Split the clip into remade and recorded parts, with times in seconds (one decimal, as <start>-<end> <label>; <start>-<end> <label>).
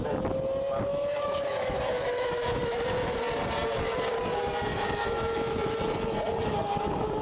0.0-0.9 recorded; 0.9-2.8 remade; 2.8-4.7 recorded; 4.7-5.8 remade; 5.8-7.2 recorded